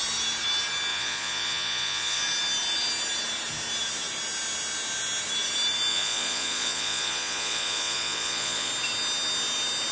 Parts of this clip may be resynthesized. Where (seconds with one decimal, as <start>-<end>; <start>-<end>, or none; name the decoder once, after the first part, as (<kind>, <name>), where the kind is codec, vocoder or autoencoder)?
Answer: 0.9-2.2 (vocoder, Vocos); 5.9-8.7